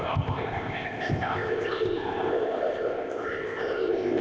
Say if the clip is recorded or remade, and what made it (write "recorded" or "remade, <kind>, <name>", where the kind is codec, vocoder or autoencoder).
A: remade, codec, ZipCodec